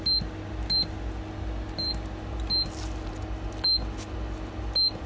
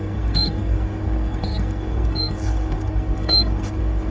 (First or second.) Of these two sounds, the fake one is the second